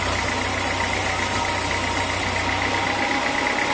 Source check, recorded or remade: recorded